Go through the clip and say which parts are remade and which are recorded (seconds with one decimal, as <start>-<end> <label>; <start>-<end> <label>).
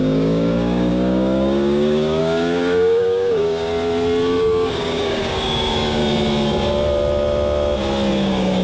0.0-3.7 remade; 3.7-4.4 recorded; 4.4-6.0 remade; 6.0-8.1 recorded; 8.1-8.6 remade